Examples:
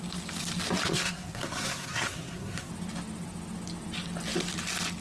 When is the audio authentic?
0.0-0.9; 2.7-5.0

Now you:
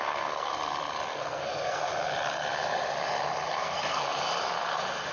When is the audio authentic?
0.5-1.1; 1.9-3.5; 4.2-5.1

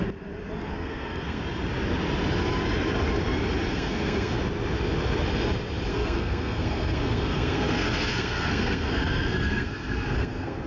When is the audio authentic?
0.0-0.7; 1.4-3.7; 4.4-5.9

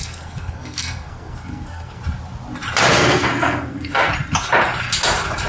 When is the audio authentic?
2.0-2.9; 4.1-5.5

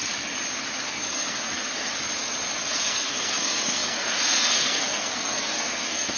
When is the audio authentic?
0.0-0.8; 1.9-2.6